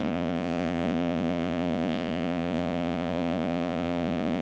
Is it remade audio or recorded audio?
remade